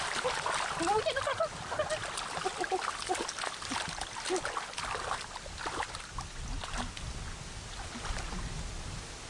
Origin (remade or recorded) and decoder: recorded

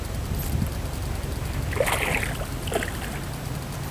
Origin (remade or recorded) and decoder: recorded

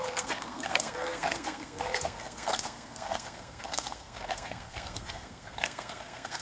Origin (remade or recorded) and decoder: remade, codec, SNAC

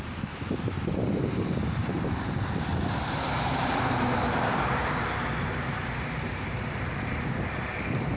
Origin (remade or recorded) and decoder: remade, vocoder, BigVGAN v2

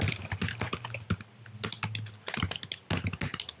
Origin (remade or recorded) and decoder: recorded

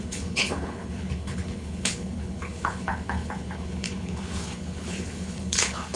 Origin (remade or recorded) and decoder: remade, codec, HILCodec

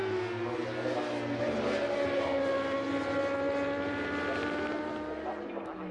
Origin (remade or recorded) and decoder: recorded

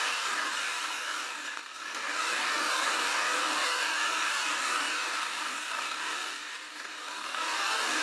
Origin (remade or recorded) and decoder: remade, codec, DAC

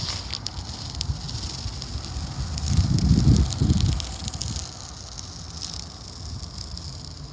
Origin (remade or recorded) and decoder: recorded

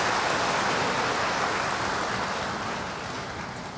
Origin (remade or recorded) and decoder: recorded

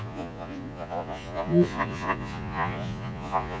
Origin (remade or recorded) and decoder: remade, vocoder, Vocos